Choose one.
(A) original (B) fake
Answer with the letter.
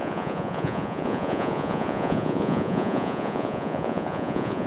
B